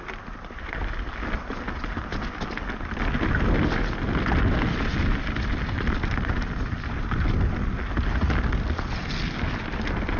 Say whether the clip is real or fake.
real